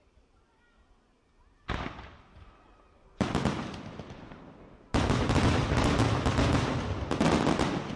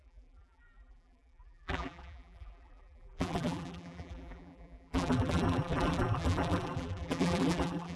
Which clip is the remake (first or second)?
second